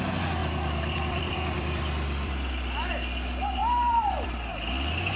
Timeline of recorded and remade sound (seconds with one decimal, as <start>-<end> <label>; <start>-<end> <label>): 0.0-0.4 recorded; 0.4-2.9 remade; 2.9-3.6 recorded; 3.6-4.3 remade; 4.3-5.2 recorded